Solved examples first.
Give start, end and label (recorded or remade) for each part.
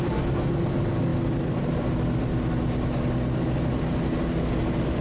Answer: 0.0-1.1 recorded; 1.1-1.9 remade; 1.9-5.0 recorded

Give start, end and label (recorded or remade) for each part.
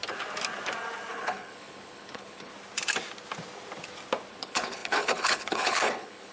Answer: 0.0-1.1 recorded; 1.1-2.5 remade; 2.5-4.3 recorded; 4.3-6.3 remade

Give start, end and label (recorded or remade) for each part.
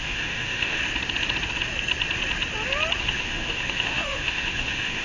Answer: 0.0-0.8 remade; 0.8-3.0 recorded; 3.0-5.0 remade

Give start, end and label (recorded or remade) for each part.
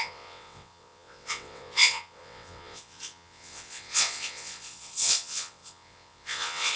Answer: 0.0-6.8 remade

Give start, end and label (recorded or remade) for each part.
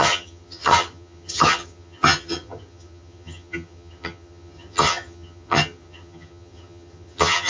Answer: 0.0-7.5 remade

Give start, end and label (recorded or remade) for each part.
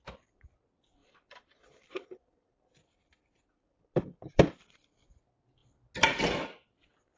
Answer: 0.0-1.0 recorded; 1.0-4.5 remade; 4.5-7.2 recorded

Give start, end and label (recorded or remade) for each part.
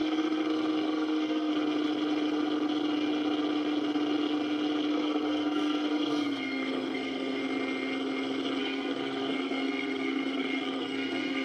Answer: 0.0-1.5 remade; 1.5-4.9 recorded; 4.9-7.4 remade; 7.4-8.6 recorded; 8.6-11.4 remade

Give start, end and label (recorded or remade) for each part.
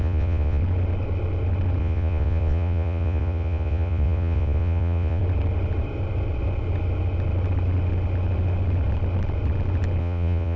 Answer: 0.0-0.6 remade; 0.6-1.8 recorded; 1.8-5.2 remade; 5.2-10.0 recorded; 10.0-10.6 remade